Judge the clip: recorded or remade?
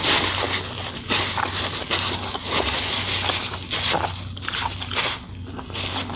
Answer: recorded